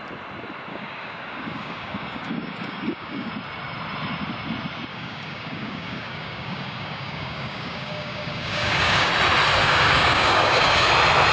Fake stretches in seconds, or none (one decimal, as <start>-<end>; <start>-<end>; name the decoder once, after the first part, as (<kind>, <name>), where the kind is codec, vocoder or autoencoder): 0.7-3.3 (codec, DAC); 4.9-9.1; 9.6-10.9